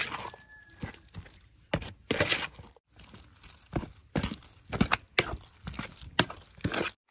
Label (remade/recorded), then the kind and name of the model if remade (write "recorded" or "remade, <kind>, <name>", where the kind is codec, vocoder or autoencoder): recorded